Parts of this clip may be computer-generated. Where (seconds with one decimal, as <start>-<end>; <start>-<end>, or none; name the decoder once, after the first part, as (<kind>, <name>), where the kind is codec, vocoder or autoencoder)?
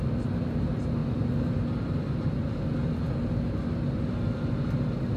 none